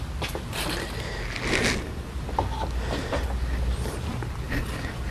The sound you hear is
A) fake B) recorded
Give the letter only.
B